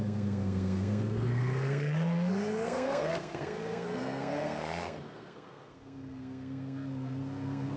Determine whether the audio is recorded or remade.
remade